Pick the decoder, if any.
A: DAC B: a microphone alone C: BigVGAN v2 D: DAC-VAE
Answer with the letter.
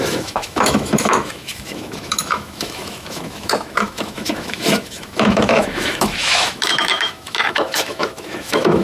D